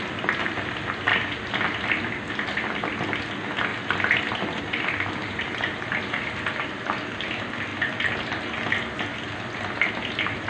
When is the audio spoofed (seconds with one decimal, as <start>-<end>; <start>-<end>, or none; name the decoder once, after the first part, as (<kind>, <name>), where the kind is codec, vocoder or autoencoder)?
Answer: none